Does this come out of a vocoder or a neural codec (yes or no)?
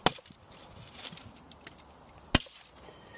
no